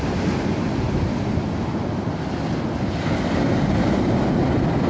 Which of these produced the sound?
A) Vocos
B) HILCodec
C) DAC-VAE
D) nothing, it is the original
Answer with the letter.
D